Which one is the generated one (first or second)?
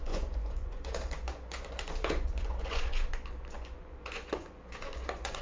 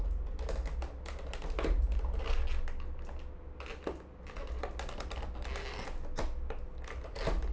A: first